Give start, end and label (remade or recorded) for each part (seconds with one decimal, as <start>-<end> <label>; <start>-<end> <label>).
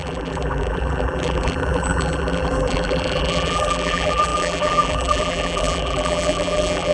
0.0-6.9 remade